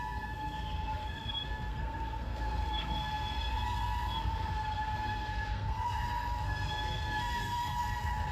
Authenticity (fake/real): fake